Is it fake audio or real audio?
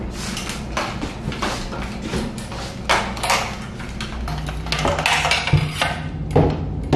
real